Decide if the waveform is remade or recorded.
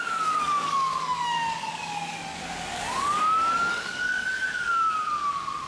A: remade